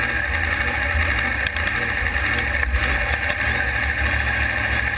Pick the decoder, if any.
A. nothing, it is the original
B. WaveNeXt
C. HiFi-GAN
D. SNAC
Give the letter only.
A